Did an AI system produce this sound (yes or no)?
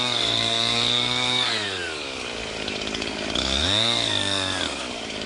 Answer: yes